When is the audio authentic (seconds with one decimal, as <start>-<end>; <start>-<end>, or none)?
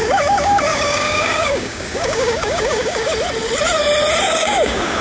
3.1-4.2